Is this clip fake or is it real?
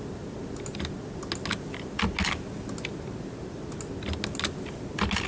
real